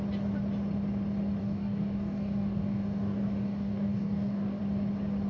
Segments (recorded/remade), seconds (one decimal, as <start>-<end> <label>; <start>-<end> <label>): 0.0-1.4 recorded; 1.4-4.6 remade; 4.6-5.3 recorded